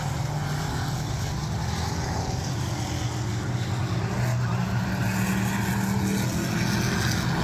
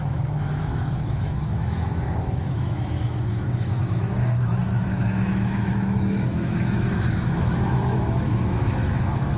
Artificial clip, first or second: second